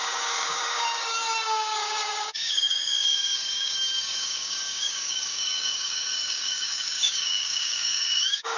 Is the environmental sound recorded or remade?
remade